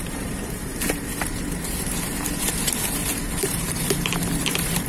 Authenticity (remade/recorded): remade